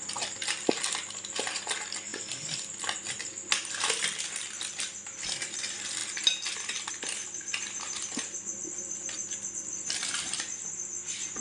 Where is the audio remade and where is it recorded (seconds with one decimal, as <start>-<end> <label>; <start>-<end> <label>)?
0.0-2.1 recorded; 2.1-3.8 remade; 3.8-8.5 recorded; 8.5-10.3 remade; 10.3-11.4 recorded